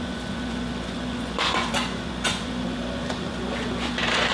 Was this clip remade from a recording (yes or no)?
yes